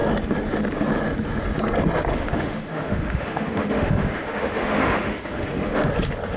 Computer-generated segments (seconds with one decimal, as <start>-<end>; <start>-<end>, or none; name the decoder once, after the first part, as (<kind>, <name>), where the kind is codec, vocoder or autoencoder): 2.1-5.9 (autoencoder, DAC-VAE)